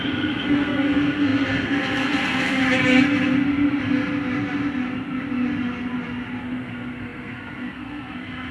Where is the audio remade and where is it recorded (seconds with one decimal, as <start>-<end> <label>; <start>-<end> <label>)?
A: 0.0-2.6 remade; 2.6-6.4 recorded; 6.4-8.5 remade